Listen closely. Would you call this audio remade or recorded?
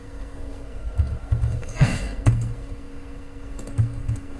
remade